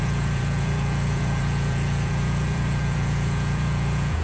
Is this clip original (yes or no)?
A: no